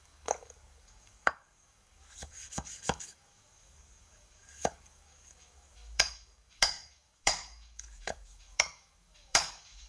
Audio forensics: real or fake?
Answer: fake